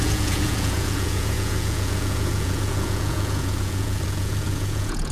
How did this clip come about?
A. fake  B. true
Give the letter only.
A